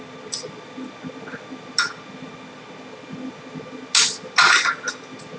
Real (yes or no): yes